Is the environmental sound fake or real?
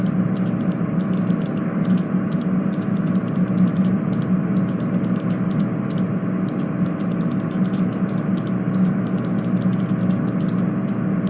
real